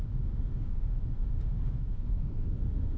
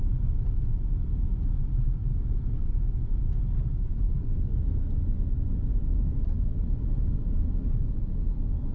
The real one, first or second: second